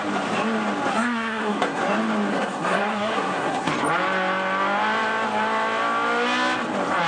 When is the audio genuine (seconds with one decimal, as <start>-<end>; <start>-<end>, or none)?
0.0-0.9; 1.8-2.3; 3.7-7.1